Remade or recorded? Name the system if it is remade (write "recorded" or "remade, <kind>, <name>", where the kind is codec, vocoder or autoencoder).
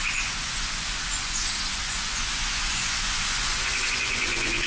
remade, vocoder, Vocos